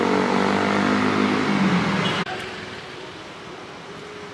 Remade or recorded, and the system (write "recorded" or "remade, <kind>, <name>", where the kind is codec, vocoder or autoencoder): recorded